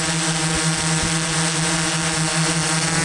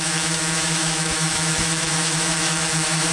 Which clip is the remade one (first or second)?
second